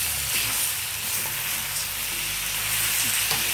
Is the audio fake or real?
real